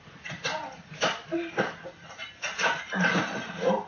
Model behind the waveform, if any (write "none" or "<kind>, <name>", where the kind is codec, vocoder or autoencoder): none